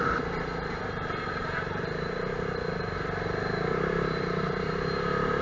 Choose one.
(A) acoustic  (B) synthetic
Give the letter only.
A